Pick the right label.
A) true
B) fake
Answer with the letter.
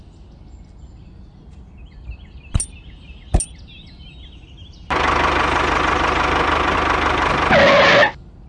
A